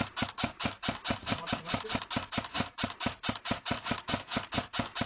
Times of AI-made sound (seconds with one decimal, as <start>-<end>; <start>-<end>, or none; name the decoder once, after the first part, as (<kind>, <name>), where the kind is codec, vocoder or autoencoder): 1.2-4.3 (vocoder, BigVGAN v2)